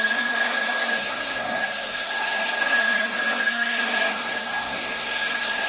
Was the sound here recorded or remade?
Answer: remade